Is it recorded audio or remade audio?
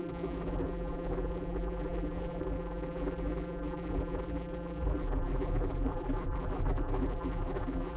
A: remade